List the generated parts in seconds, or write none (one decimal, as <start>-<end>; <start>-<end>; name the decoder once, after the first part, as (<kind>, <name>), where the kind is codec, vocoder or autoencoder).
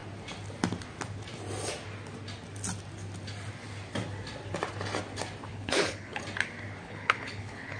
5.5-6.2 (codec, HILCodec); 6.8-7.8